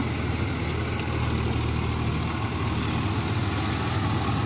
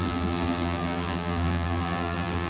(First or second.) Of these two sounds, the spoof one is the second